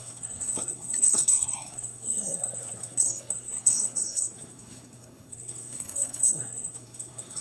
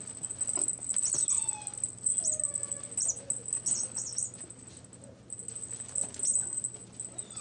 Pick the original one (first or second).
second